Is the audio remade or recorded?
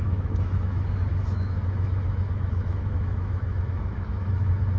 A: remade